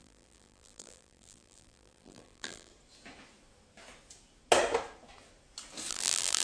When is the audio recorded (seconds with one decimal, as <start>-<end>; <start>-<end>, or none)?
2.7-5.9